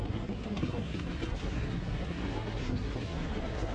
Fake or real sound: fake